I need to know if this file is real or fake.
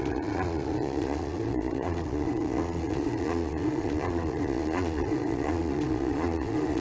fake